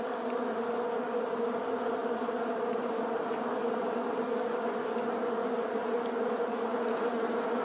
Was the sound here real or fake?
real